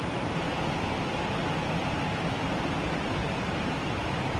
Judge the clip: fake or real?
real